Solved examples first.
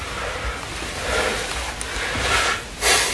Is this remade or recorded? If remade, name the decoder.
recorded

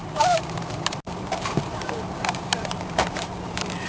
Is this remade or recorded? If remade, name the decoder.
remade, vocoder, BigVGAN v2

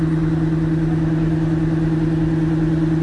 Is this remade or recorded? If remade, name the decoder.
recorded